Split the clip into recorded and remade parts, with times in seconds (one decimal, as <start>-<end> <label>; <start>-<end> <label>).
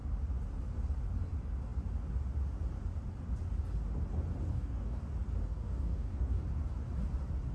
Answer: 0.0-4.5 recorded; 4.5-5.0 remade; 5.0-5.5 recorded; 5.5-6.4 remade; 6.4-7.5 recorded